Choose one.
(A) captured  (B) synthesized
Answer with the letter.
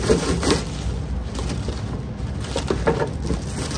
A